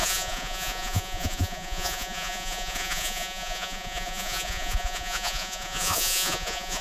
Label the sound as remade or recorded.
remade